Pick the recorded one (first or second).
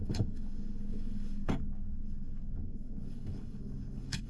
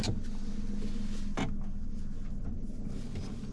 second